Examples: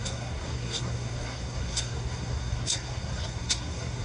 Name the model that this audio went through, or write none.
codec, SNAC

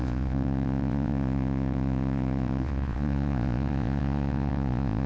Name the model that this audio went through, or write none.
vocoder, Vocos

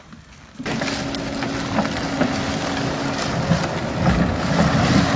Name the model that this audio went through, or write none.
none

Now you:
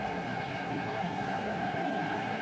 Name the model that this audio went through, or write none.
codec, SNAC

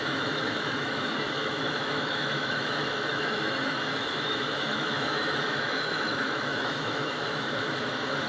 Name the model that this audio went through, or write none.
autoencoder, DAC-VAE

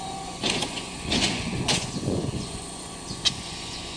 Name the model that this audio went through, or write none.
vocoder, Vocos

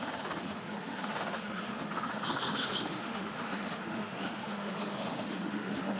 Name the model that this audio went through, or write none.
autoencoder, DAC-VAE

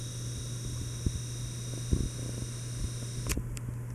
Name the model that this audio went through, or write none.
none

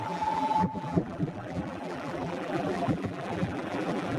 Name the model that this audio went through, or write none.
vocoder, BigVGAN v2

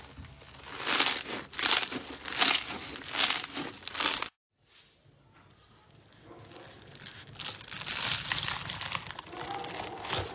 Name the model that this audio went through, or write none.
none